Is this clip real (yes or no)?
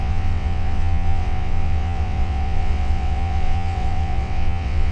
no